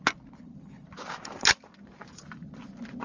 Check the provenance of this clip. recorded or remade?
recorded